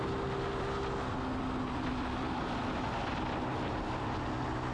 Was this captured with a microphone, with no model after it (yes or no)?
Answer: yes